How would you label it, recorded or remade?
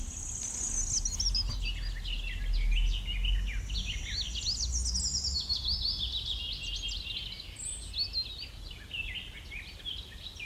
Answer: recorded